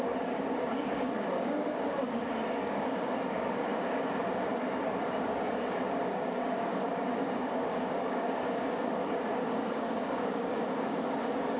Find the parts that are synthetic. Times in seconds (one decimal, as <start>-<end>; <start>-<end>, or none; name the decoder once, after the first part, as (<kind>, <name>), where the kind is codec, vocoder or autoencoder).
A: 0.0-11.6 (codec, DAC)